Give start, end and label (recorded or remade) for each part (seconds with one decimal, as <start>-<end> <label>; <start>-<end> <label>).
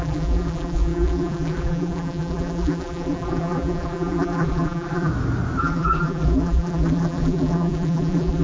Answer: 0.0-5.1 remade; 5.1-5.6 recorded; 5.6-8.4 remade